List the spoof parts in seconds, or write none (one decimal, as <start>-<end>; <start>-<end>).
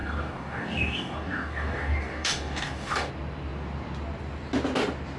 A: 0.0-3.1